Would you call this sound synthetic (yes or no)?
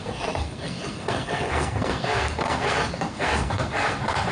yes